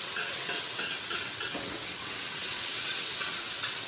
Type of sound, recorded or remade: remade